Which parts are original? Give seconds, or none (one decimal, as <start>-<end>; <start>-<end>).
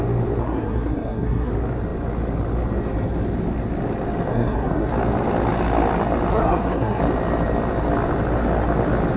0.0-0.4; 1.5-4.3; 4.9-6.3; 7.0-9.2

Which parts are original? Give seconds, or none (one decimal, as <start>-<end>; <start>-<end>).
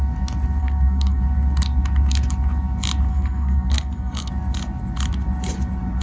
0.0-0.6; 1.2-3.1; 4.3-6.0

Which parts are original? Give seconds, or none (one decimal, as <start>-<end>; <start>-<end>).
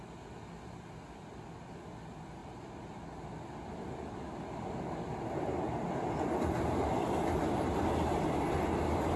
0.0-9.2